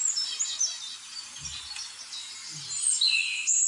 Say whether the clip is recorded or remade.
recorded